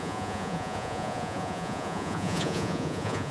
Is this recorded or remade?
remade